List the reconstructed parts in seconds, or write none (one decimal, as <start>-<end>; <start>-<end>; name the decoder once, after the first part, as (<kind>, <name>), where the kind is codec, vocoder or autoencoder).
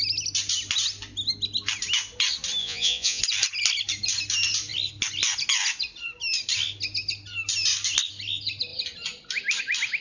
2.6-3.2 (vocoder, Vocos)